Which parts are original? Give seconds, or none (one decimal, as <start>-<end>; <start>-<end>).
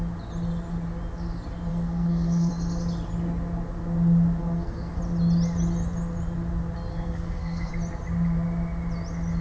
0.0-1.7; 2.5-4.4; 5.0-6.9; 7.7-9.4